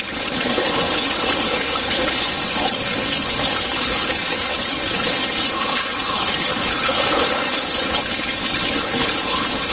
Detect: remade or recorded remade